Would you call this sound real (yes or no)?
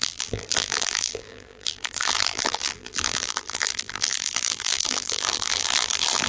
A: no